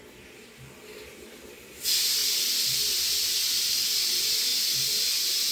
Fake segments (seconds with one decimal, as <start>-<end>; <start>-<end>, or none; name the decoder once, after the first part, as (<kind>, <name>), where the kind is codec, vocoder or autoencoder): none

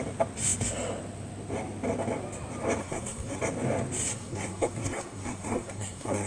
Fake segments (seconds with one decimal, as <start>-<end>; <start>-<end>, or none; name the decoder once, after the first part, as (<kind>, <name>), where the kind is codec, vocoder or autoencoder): 2.8-3.4 (codec, SNAC); 4.1-6.3

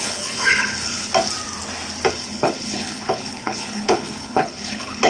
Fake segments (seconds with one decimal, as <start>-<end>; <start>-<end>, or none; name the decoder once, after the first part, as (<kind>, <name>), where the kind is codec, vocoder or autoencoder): 0.0-1.1 (codec, HILCodec); 2.1-5.1

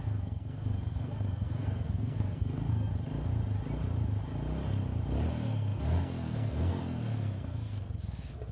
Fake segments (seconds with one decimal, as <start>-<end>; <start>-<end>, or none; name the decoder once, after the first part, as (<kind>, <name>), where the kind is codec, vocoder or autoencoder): 0.0-2.9 (codec, SNAC); 5.3-8.5

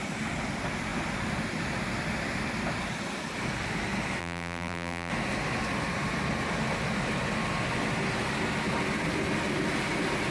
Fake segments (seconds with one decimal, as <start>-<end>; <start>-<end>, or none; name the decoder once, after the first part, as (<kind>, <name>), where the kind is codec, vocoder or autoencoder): 4.2-5.1 (vocoder, BigVGAN v2)